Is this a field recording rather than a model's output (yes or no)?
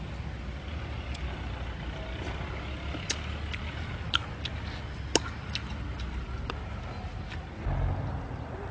yes